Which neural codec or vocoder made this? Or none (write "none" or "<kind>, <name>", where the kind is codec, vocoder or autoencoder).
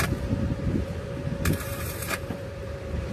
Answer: vocoder, BigVGAN v2